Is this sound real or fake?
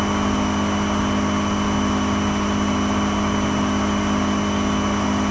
real